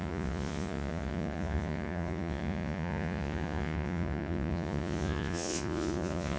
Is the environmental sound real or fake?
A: fake